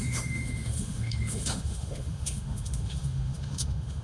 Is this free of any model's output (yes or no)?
no